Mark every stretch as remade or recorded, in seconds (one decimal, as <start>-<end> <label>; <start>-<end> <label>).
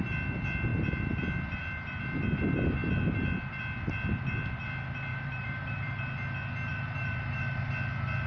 0.0-5.1 recorded; 5.1-5.9 remade; 5.9-6.7 recorded; 6.7-7.7 remade; 7.7-8.3 recorded